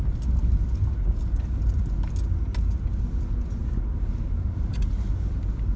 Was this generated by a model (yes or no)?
no